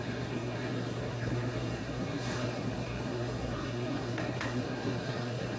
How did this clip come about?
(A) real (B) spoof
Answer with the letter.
B